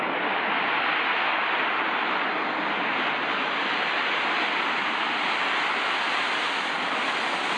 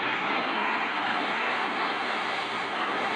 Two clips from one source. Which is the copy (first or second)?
second